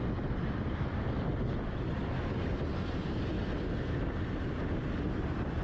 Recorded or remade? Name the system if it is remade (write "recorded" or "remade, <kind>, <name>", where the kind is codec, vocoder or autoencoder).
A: recorded